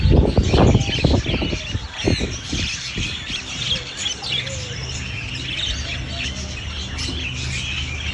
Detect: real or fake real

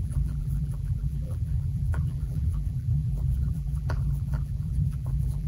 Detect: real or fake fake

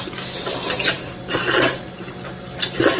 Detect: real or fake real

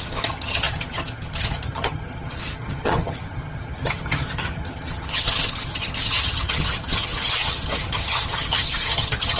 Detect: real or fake fake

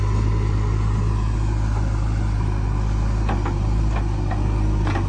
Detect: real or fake real